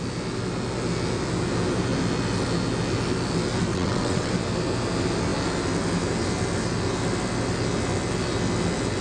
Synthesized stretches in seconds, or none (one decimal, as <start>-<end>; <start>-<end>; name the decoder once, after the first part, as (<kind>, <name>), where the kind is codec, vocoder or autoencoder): 3.7-4.3 (vocoder, WaveNeXt)